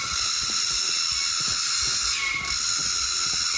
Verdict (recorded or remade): recorded